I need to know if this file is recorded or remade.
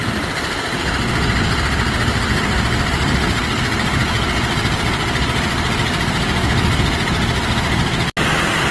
recorded